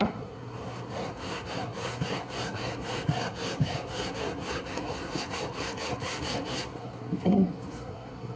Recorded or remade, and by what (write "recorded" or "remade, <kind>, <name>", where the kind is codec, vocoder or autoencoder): remade, codec, SNAC